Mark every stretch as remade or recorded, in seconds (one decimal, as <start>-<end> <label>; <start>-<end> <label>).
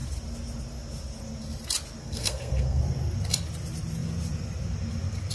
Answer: 0.0-2.0 recorded; 2.0-2.8 remade; 2.8-5.3 recorded